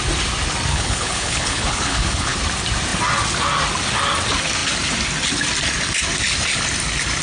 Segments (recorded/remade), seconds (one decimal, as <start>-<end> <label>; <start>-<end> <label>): 0.0-0.7 recorded; 0.7-2.4 remade; 2.4-7.2 recorded